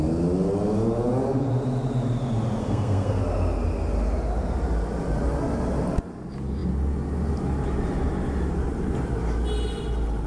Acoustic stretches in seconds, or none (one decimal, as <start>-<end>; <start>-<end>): 0.0-2.6; 3.2-10.3